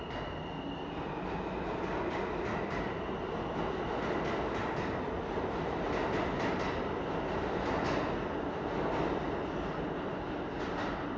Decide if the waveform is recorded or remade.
recorded